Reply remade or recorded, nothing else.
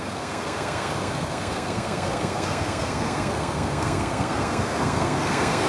remade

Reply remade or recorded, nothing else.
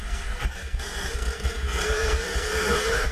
remade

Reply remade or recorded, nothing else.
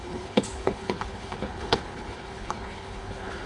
remade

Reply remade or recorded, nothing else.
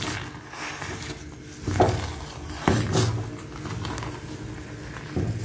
recorded